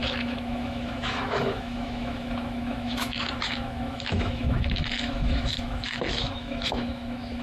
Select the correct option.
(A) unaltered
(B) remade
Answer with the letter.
B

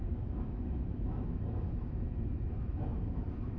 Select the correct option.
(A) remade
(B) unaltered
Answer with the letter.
A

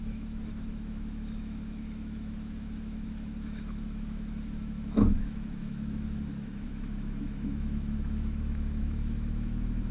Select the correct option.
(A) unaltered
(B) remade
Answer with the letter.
B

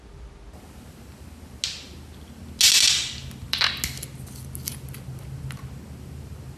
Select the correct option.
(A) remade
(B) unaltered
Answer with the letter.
B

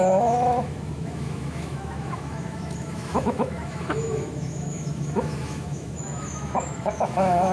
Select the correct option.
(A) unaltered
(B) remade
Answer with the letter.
B